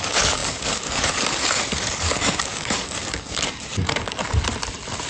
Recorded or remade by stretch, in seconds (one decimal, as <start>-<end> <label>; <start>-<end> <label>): 0.0-4.2 remade; 4.2-5.1 recorded